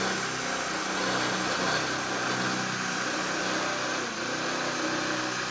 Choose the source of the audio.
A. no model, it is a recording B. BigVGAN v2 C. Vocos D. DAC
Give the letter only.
A